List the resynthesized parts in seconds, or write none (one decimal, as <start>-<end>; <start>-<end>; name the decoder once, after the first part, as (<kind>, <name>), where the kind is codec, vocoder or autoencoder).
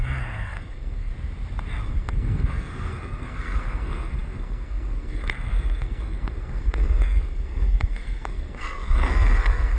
0.0-1.1 (codec, SNAC); 1.9-9.8